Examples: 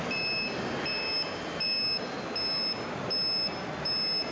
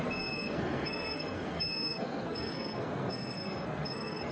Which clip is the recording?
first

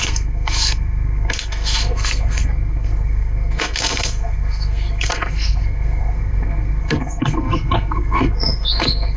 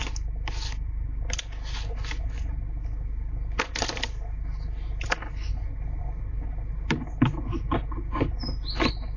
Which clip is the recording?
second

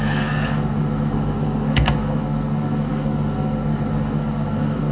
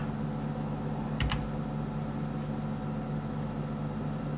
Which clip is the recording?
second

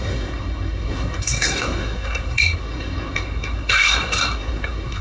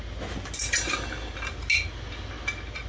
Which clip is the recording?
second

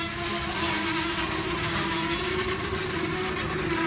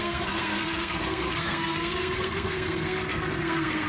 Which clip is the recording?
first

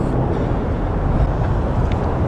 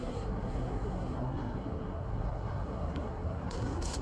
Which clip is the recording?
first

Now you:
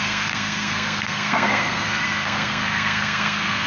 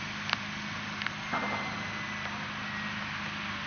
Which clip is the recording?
second